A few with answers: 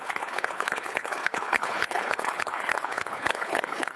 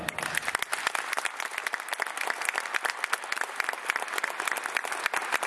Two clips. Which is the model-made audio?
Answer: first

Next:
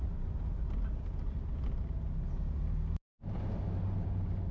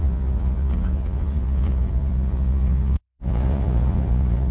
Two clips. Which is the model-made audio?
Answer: second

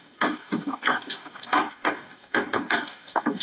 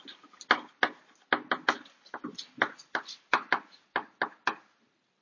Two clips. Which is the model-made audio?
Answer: first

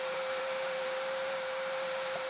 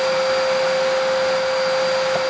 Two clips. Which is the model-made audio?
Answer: first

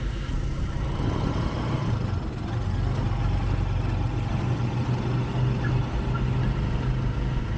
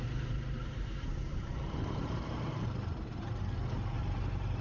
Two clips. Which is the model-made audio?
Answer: second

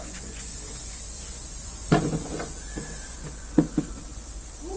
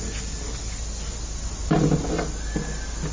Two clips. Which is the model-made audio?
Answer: first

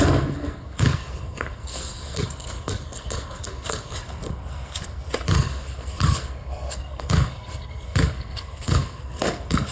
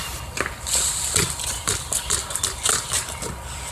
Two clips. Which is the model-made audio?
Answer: first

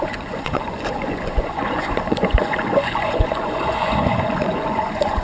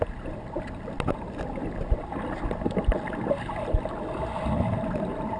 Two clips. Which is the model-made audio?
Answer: first